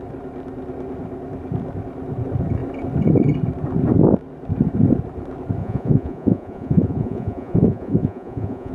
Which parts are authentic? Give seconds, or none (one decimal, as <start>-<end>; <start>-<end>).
0.0-5.6